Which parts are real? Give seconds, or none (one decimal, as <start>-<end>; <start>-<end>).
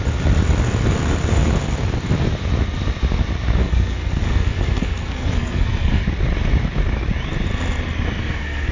0.0-3.6; 6.0-8.2